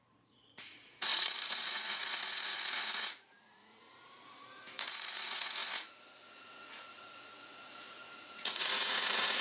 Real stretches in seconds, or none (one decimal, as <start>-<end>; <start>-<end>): none

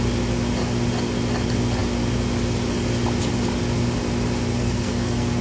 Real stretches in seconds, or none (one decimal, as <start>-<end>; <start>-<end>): 0.0-4.5

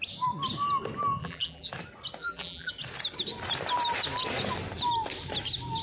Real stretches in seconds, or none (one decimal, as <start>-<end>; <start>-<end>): 0.0-1.2; 1.7-2.2; 2.7-5.8

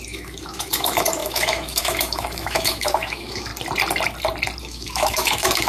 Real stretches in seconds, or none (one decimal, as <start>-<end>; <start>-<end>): 3.5-4.6

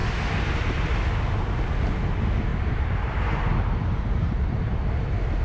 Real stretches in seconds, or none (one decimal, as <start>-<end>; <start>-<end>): 0.6-2.5; 4.7-5.4

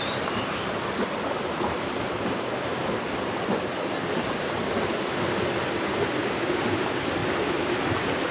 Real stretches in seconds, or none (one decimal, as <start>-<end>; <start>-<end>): 7.2-7.8